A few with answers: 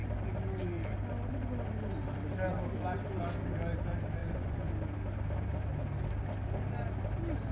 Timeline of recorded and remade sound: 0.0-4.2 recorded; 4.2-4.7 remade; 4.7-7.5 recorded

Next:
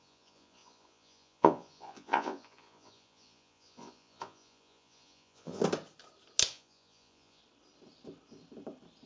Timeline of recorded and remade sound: 0.0-5.6 remade; 5.6-6.5 recorded; 6.5-7.4 remade; 7.4-9.1 recorded